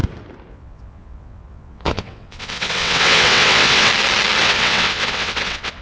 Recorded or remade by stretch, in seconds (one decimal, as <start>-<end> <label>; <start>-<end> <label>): 0.0-0.5 recorded; 0.5-3.9 remade; 3.9-4.4 recorded; 4.4-5.8 remade

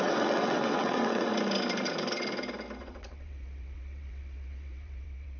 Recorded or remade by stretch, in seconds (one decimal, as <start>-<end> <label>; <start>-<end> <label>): 0.0-1.3 remade; 1.3-2.8 recorded; 2.8-5.4 remade

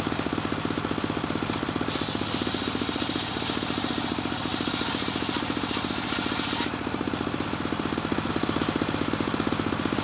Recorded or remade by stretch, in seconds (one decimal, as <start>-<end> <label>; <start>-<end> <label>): 0.0-10.0 recorded

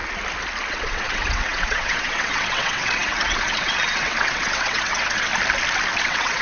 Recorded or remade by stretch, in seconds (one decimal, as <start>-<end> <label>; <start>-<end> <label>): 0.0-0.7 recorded; 0.7-5.3 remade; 5.3-6.0 recorded; 6.0-6.4 remade

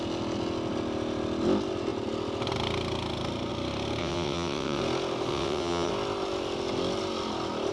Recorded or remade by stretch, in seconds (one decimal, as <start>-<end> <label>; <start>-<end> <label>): 0.0-4.0 recorded; 4.0-4.8 remade; 4.8-5.3 recorded; 5.3-5.9 remade; 5.9-7.7 recorded

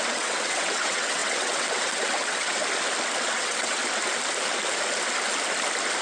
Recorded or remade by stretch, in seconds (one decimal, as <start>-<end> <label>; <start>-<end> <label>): 0.0-2.6 remade; 2.6-3.3 recorded; 3.3-3.8 remade; 3.8-6.0 recorded

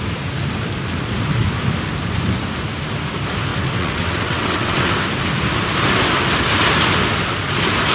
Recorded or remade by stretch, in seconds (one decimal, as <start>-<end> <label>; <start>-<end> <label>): 0.0-3.5 recorded; 3.5-4.9 remade; 4.9-7.9 recorded